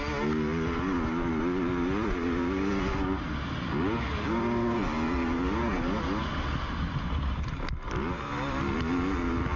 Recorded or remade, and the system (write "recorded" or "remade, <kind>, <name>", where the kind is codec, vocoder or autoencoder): recorded